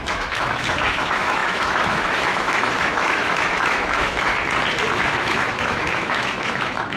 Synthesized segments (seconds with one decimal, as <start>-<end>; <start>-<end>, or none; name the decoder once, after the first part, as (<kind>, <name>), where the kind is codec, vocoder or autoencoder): 0.0-4.3 (autoencoder, DAC-VAE); 4.9-7.0